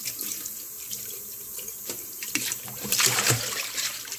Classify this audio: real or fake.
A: fake